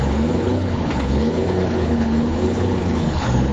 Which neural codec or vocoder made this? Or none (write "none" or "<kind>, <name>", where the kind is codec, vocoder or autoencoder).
codec, HILCodec